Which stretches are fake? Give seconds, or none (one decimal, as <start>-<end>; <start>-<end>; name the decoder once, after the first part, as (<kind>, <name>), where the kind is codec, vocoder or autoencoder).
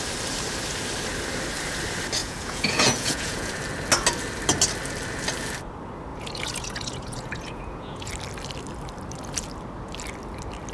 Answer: 2.2-3.6 (vocoder, Vocos); 6.1-8.1